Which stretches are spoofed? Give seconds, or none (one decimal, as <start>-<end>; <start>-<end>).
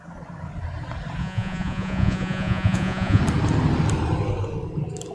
1.2-3.2